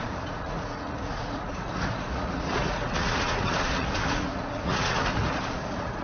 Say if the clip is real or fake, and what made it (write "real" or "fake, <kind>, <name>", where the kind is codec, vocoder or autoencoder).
fake, vocoder, Vocos